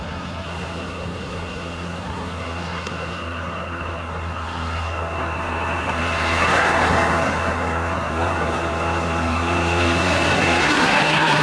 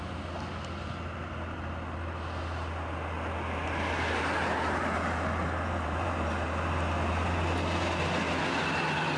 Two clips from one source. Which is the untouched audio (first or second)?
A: second